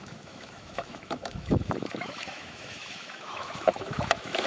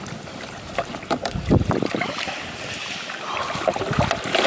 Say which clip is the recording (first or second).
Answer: second